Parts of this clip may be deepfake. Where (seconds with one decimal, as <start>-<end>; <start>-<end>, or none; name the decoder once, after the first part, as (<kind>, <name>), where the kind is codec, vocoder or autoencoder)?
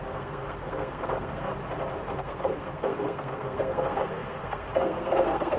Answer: 0.0-1.5 (codec, SNAC); 2.2-5.6